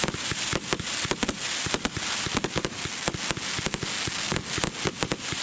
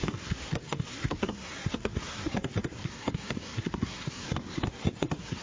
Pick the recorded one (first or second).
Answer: first